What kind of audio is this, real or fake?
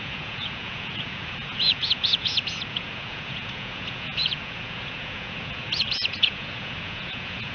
fake